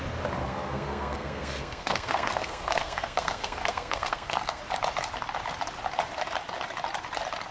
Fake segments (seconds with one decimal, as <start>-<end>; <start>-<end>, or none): 0.4-4.6